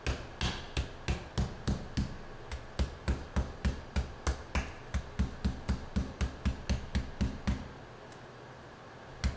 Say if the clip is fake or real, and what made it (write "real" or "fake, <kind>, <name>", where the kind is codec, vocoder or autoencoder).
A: real